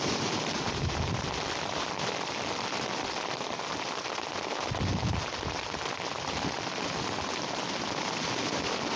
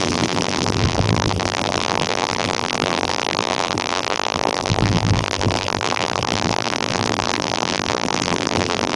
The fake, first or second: second